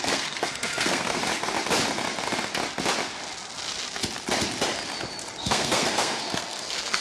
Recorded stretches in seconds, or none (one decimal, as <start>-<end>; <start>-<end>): 1.2-5.4